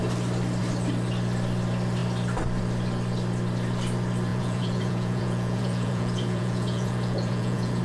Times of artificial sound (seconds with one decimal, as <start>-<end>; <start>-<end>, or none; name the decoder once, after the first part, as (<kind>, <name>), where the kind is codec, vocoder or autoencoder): 4.3-7.8 (vocoder, Vocos)